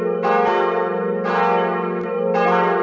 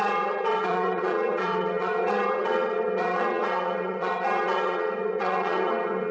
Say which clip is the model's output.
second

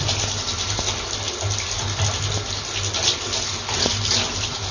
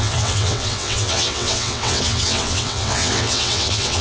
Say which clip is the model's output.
second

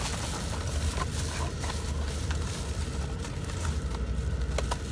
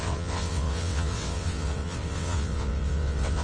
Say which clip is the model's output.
second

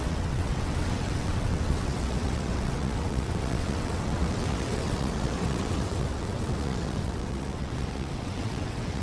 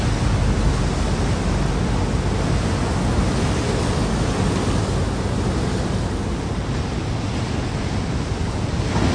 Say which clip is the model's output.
first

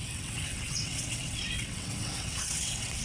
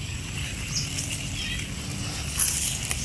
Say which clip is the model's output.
first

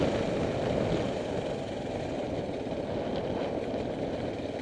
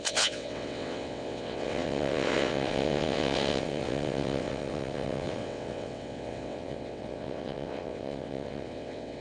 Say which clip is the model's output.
second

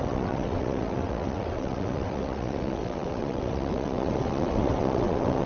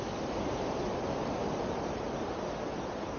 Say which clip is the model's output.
first